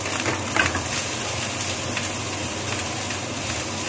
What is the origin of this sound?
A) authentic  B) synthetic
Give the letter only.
A